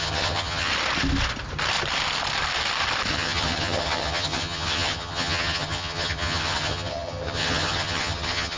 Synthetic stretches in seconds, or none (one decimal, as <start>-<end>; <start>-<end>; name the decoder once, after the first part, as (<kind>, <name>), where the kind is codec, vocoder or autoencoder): 0.0-0.7 (vocoder, HiFi-GAN); 3.1-8.6